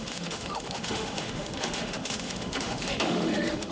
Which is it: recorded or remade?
remade